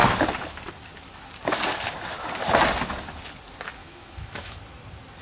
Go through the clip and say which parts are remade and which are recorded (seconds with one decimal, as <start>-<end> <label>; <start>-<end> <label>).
0.0-3.8 recorded; 3.8-4.6 remade; 4.6-5.2 recorded